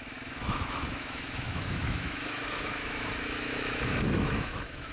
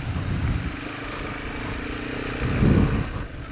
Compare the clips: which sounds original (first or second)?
second